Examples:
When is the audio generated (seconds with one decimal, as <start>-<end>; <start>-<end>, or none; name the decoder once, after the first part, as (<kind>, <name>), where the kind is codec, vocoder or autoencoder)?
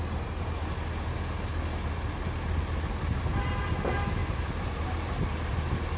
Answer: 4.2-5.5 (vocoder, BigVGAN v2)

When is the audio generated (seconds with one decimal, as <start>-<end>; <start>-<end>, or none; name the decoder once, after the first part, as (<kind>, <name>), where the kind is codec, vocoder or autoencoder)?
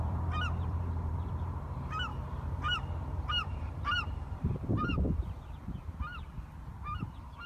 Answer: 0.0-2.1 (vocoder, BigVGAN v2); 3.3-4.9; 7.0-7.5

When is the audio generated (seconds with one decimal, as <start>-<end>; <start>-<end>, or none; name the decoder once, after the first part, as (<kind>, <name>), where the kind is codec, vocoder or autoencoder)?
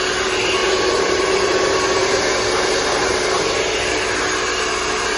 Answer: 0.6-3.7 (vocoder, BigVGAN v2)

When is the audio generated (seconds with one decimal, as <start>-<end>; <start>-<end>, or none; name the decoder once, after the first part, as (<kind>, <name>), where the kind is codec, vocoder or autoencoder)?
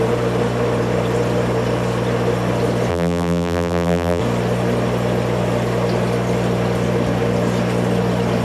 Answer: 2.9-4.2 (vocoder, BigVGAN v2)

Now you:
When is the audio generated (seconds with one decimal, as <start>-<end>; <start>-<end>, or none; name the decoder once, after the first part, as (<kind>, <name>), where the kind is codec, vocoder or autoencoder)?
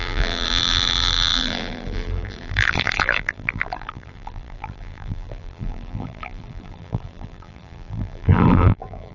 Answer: 0.0-9.1 (vocoder, BigVGAN v2)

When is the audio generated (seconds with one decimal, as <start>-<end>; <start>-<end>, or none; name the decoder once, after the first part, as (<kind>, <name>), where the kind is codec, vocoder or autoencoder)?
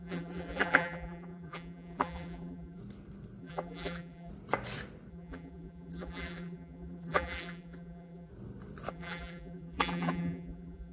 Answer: 0.0-2.8 (vocoder, BigVGAN v2); 3.4-4.3; 5.1-8.3; 8.9-10.9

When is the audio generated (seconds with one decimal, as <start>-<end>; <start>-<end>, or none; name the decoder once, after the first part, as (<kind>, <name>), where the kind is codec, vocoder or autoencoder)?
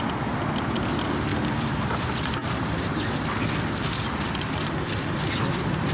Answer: 1.3-4.8 (vocoder, BigVGAN v2)